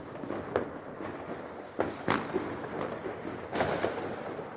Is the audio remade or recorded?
recorded